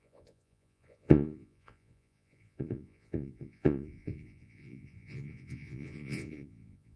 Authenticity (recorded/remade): remade